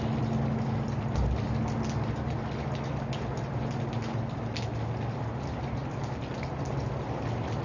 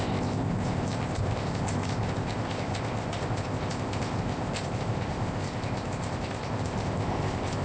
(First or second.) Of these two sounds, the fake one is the second